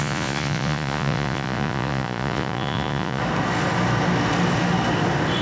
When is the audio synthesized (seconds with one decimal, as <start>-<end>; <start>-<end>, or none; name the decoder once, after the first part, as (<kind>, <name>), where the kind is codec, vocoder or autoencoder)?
0.0-3.2 (vocoder, Vocos)